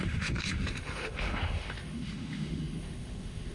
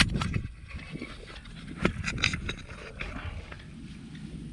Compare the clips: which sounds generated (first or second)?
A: first